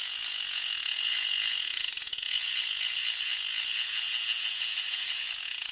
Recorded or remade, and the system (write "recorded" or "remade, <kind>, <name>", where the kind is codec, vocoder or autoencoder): remade, vocoder, Vocos